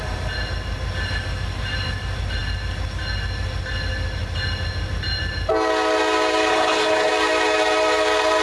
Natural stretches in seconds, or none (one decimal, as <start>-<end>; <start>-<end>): 0.0-6.5; 7.1-8.4